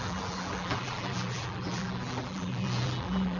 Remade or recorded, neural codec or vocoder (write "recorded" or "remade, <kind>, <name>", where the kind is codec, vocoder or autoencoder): remade, vocoder, BigVGAN v2